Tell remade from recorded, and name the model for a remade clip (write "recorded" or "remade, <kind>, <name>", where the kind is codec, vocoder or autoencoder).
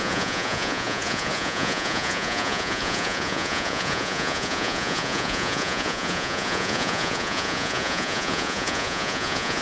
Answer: remade, vocoder, Vocos